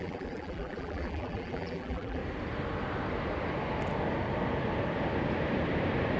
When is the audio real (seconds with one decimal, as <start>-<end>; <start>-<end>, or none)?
2.2-6.2